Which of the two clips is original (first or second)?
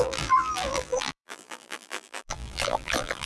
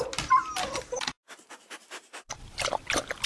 second